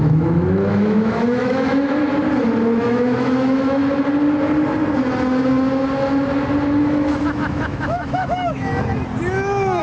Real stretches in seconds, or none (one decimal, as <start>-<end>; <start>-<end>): 2.0-2.8; 3.8-6.8; 8.7-9.8